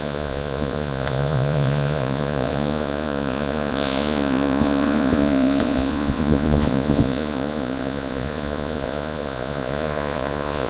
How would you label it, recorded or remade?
remade